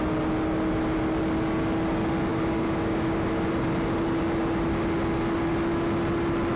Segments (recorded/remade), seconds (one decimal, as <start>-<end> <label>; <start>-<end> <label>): 0.0-2.3 recorded; 2.3-3.3 remade; 3.3-6.6 recorded